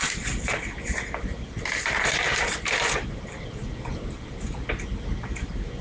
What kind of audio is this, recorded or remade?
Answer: recorded